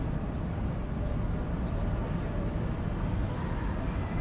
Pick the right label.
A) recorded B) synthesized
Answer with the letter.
A